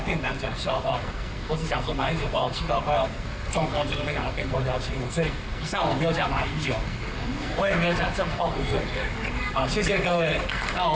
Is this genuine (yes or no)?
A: no